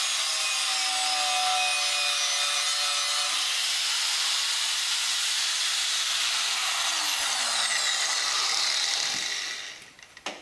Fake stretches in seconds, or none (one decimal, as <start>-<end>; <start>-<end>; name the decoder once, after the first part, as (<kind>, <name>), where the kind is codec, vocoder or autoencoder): none